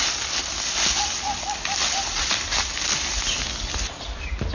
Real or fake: real